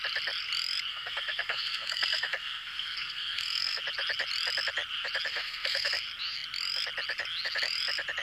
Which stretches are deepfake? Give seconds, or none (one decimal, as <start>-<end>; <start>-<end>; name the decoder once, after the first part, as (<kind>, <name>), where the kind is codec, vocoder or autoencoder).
0.9-3.8 (codec, SNAC); 5.3-5.9

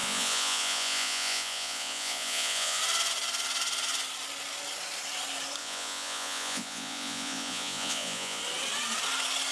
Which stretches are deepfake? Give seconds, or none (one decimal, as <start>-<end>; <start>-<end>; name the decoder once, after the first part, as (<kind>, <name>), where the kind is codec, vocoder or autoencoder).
0.0-2.8 (vocoder, Vocos); 5.6-8.4

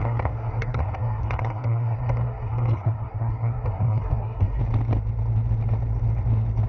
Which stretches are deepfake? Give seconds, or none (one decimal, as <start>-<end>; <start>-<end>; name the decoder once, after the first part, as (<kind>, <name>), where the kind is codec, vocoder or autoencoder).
0.0-4.6 (codec, SNAC)

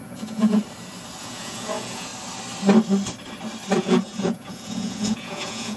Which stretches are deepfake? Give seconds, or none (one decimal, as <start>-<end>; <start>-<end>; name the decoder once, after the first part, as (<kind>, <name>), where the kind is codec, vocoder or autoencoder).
0.0-0.6 (vocoder, Vocos); 1.2-2.1; 3.8-5.8

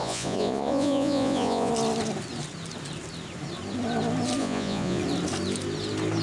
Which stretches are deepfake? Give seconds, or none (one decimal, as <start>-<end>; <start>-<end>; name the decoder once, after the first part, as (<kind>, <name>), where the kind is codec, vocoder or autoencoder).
0.0-1.7 (vocoder, Vocos); 4.4-5.0